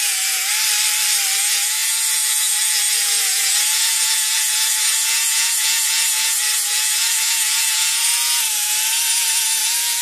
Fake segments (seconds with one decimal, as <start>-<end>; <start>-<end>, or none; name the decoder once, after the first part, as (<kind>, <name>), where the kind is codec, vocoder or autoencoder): 0.0-0.5 (vocoder, Vocos); 1.4-10.0